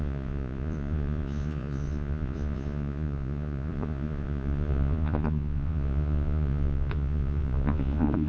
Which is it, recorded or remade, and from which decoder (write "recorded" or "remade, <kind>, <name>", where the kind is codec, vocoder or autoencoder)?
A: remade, vocoder, Vocos